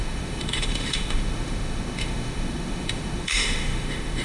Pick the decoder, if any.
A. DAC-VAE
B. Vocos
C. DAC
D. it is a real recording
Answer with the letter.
A